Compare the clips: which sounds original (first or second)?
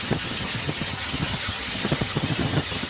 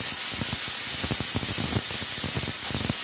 second